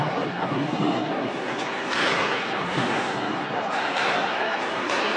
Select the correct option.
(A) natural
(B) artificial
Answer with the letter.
B